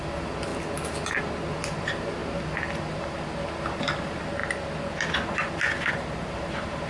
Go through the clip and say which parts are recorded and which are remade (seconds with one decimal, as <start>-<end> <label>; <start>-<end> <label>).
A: 0.0-0.5 remade; 0.5-1.2 recorded; 1.2-2.2 remade; 2.2-2.8 recorded; 2.8-4.4 remade; 4.4-5.9 recorded; 5.9-6.9 remade